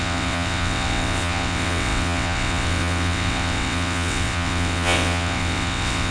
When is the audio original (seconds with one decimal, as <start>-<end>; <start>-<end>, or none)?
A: none